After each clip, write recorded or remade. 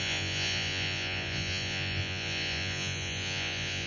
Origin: remade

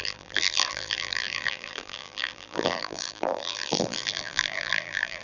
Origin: remade